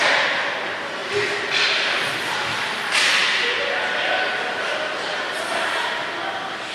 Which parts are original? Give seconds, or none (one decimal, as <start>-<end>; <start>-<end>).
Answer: 0.0-6.7